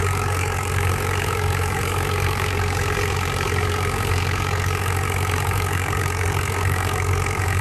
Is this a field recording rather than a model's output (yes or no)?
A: no